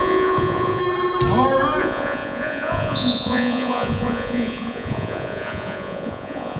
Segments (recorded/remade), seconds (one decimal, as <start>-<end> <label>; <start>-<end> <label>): 0.0-0.8 remade; 0.8-1.8 recorded; 1.8-6.6 remade